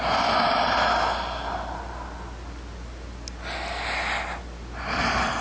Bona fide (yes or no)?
yes